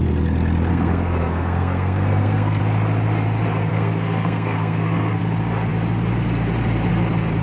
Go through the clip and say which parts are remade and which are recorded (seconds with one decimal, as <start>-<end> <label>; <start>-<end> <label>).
0.0-0.7 recorded; 0.7-2.6 remade; 2.6-3.7 recorded; 3.7-5.2 remade; 5.2-7.4 recorded